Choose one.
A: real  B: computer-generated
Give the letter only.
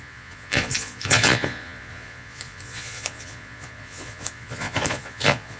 B